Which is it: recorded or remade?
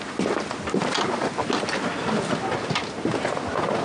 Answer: recorded